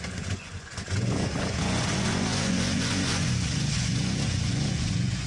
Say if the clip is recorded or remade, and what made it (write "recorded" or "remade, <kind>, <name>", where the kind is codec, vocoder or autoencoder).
remade, vocoder, Vocos